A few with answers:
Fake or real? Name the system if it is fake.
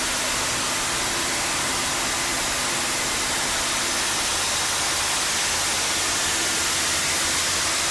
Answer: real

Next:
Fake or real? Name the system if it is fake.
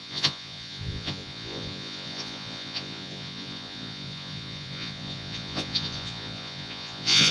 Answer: fake, vocoder, Vocos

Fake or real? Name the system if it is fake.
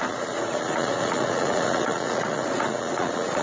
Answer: fake, vocoder, Vocos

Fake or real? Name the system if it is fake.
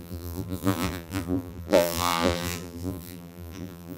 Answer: fake, vocoder, BigVGAN v2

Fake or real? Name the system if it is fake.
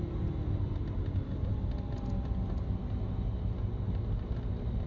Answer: real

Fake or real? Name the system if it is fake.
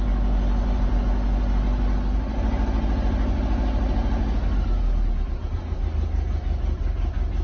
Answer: real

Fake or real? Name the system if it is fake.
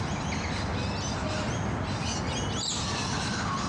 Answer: real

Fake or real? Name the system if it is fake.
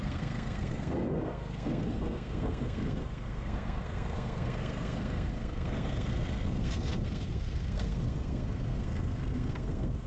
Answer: fake, codec, SNAC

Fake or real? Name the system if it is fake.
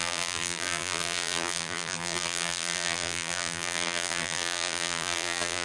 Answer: fake, vocoder, BigVGAN v2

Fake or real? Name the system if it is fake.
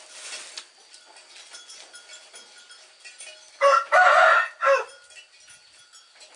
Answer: real